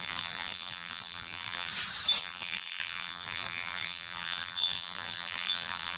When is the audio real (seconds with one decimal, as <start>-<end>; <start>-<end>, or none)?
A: 1.7-2.2